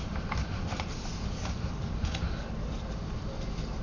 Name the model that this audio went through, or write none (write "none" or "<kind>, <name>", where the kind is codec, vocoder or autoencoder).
vocoder, BigVGAN v2